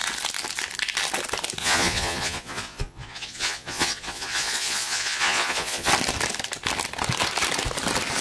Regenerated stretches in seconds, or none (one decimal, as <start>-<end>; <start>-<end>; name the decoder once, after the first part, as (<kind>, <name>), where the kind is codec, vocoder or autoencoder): 1.6-5.9 (vocoder, Vocos)